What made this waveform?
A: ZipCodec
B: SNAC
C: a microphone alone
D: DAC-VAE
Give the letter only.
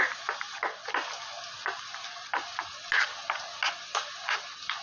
C